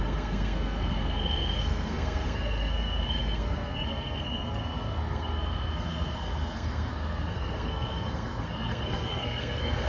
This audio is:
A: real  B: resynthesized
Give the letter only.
B